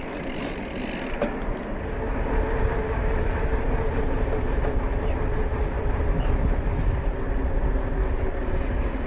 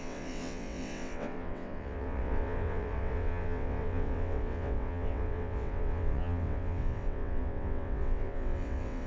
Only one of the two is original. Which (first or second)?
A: first